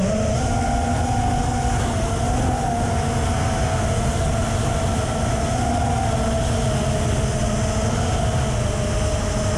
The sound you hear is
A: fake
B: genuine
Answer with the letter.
B